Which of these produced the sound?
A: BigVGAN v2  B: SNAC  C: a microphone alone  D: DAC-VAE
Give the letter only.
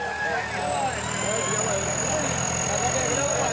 C